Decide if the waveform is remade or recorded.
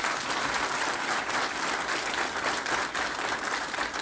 recorded